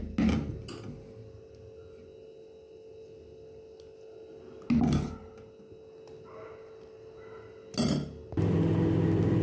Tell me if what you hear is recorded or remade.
recorded